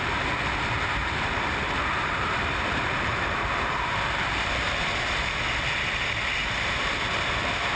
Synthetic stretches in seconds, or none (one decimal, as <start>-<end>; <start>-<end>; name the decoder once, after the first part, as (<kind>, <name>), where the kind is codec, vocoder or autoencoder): 1.0-4.8 (vocoder, BigVGAN v2); 6.4-6.9